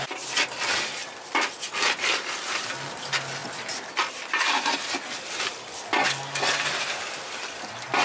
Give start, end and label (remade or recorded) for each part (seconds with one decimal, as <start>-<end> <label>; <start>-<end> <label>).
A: 0.0-8.0 recorded